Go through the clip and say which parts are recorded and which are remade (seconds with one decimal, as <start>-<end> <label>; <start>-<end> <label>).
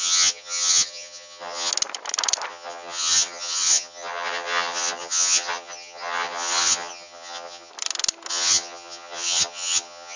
0.0-1.7 remade; 1.7-2.5 recorded; 2.5-7.7 remade; 7.7-8.3 recorded; 8.3-10.2 remade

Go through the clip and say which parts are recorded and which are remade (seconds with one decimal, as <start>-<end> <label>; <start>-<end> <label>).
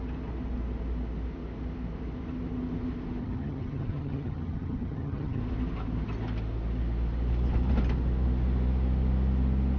0.0-3.2 recorded; 3.2-5.4 remade; 5.4-9.8 recorded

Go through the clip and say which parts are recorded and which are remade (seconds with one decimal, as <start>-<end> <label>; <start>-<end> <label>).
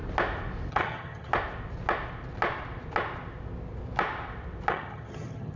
0.0-0.7 recorded; 0.7-1.3 remade; 1.3-4.7 recorded; 4.7-5.6 remade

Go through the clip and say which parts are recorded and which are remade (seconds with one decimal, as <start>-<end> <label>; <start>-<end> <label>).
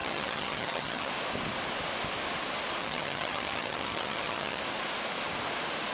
0.0-1.1 remade; 1.1-2.8 recorded; 2.8-4.6 remade; 4.6-5.9 recorded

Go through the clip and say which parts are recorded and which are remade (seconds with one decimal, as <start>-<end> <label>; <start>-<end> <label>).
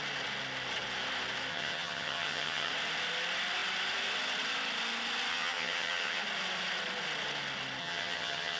0.0-1.5 recorded; 1.5-2.7 remade; 2.7-5.3 recorded; 5.3-6.2 remade; 6.2-7.8 recorded; 7.8-8.6 remade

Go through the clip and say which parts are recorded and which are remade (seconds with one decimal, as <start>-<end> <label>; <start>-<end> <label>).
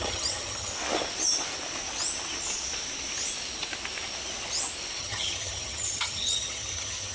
0.0-0.7 remade; 0.7-5.0 recorded; 5.0-7.1 remade